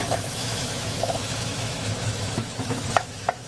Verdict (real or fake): fake